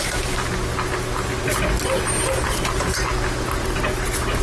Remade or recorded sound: recorded